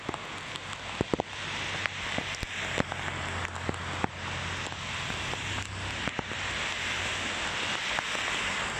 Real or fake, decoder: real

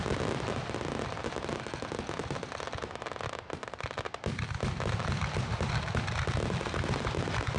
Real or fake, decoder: real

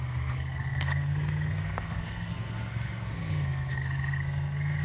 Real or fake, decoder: fake, codec, SNAC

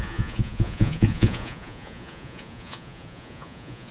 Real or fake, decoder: fake, vocoder, Vocos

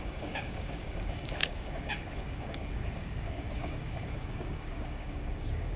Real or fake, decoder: fake, codec, DAC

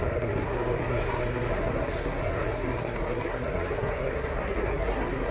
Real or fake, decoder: fake, codec, SNAC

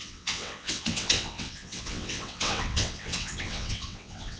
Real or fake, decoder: fake, vocoder, WaveNeXt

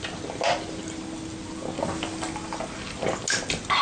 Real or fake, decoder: real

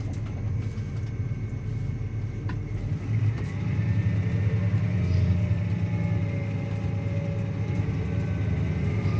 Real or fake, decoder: real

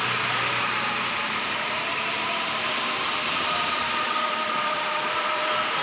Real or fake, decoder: fake, vocoder, BigVGAN v2